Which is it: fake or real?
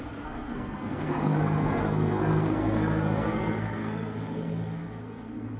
fake